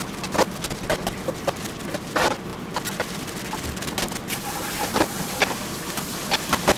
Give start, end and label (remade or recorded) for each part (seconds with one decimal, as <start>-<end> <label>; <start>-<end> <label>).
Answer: 0.0-6.8 recorded